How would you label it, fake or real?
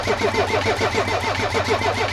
real